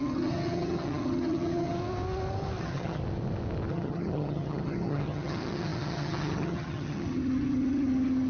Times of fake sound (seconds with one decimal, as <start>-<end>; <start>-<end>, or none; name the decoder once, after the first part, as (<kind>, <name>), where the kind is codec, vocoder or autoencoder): 0.0-1.8 (vocoder, HiFi-GAN); 2.6-3.0; 3.7-8.3